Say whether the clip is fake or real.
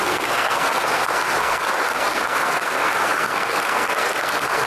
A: fake